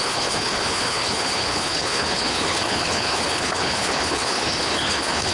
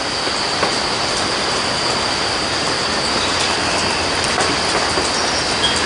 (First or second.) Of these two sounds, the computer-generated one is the first